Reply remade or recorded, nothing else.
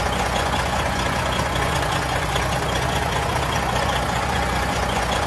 remade